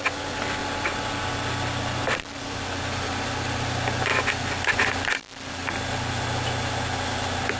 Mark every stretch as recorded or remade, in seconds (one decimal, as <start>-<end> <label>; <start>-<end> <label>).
0.0-0.6 recorded; 0.6-2.4 remade; 2.4-7.6 recorded

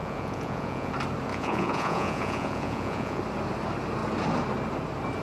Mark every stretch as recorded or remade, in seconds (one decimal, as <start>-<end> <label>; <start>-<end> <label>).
0.0-0.9 remade; 0.9-1.3 recorded; 1.3-3.2 remade; 3.2-5.2 recorded

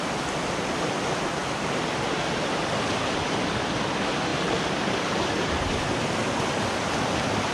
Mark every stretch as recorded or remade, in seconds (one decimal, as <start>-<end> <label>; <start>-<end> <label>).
0.0-7.5 recorded

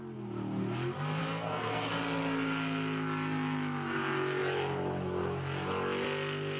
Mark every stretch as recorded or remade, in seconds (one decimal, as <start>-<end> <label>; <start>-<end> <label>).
0.0-1.2 recorded; 1.2-1.9 remade; 1.9-6.6 recorded

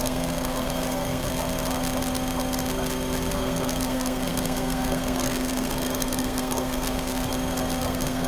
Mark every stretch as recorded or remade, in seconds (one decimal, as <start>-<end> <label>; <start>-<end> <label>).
0.0-1.3 remade; 1.3-3.3 recorded; 3.3-7.3 remade; 7.3-7.8 recorded; 7.8-8.3 remade

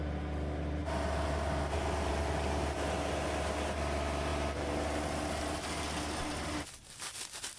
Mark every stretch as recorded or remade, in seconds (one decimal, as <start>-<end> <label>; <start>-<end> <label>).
0.0-7.6 recorded